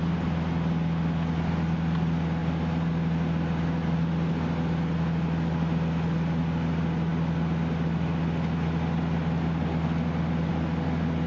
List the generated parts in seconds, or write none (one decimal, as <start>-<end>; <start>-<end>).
none